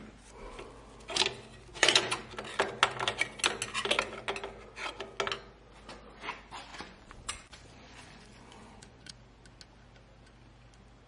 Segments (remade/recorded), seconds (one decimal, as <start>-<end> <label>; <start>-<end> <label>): 0.0-1.7 recorded; 1.7-2.2 remade; 2.2-6.7 recorded; 6.7-9.1 remade; 9.1-11.1 recorded